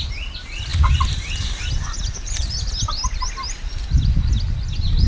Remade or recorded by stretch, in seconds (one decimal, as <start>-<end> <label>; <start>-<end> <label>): 0.0-5.1 recorded